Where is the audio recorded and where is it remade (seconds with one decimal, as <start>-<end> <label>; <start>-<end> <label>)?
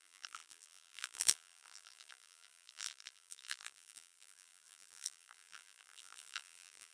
0.0-6.9 remade